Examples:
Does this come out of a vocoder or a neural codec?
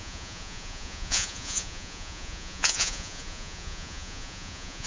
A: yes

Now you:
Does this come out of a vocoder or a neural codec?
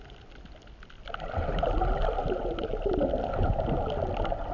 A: no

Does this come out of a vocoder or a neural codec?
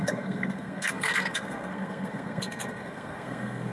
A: yes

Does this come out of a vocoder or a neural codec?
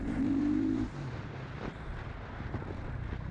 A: yes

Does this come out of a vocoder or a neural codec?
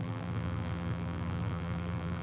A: yes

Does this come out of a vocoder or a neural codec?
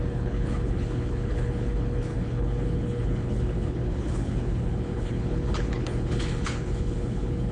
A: yes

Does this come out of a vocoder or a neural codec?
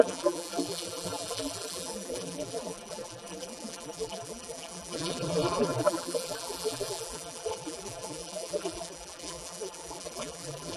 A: yes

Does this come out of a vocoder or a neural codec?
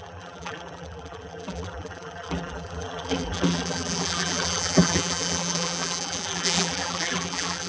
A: yes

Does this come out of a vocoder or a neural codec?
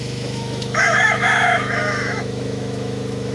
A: yes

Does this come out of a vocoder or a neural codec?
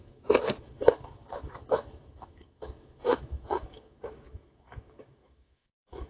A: yes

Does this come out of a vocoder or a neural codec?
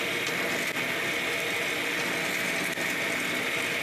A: no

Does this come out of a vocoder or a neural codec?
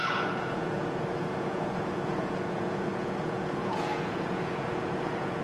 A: yes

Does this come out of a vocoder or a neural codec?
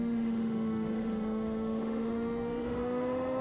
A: yes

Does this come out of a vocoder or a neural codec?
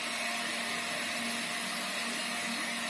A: no